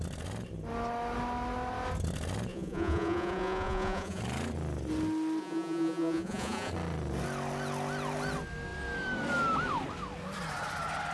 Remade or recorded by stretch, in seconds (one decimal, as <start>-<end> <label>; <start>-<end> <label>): 0.0-2.5 recorded; 2.5-4.2 remade; 4.2-5.4 recorded; 5.4-6.7 remade; 6.7-11.1 recorded